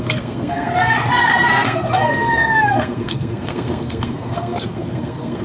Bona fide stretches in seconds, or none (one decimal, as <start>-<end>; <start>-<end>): none